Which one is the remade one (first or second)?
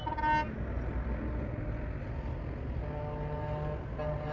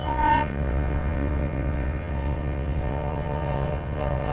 second